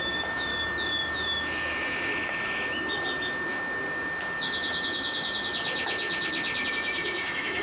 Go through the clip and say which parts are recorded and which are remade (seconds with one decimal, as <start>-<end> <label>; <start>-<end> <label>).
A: 0.0-0.5 remade; 0.5-1.1 recorded; 1.1-2.1 remade; 2.1-6.7 recorded; 6.7-7.6 remade